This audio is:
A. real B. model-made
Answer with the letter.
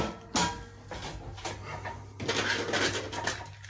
A